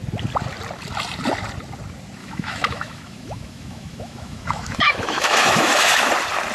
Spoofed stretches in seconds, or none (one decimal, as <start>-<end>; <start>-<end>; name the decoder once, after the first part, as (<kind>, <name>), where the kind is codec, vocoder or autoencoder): 2.2-6.1 (autoencoder, DAC-VAE)